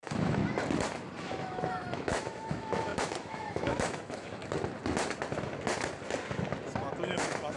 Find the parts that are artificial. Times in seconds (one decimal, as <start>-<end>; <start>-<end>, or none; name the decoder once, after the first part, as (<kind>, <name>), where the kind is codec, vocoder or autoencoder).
0.0-0.4 (autoencoder, DAC-VAE); 1.2-4.4; 7.0-7.6